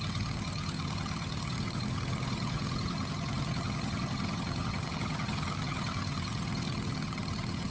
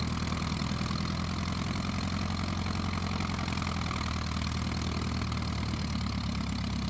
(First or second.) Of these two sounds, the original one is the second